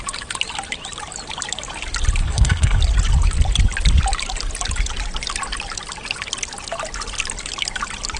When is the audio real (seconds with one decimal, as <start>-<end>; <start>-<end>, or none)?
0.0-2.2; 2.8-8.2